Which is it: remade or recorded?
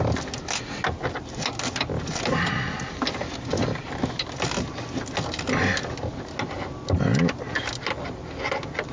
recorded